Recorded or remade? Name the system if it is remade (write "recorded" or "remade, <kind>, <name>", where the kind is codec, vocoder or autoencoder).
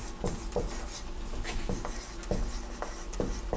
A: recorded